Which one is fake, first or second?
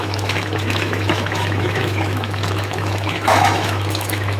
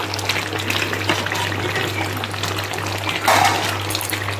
first